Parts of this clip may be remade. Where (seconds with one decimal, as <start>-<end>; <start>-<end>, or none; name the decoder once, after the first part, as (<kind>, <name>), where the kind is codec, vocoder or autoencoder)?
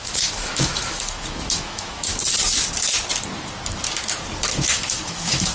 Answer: 0.0-2.1 (autoencoder, DAC-VAE); 4.5-5.5